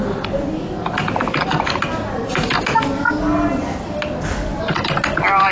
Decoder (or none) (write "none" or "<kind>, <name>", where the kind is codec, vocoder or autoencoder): none